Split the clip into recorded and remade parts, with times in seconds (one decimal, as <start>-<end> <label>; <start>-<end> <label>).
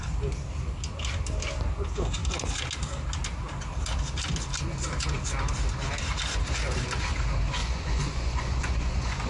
0.0-7.6 recorded; 7.6-9.3 remade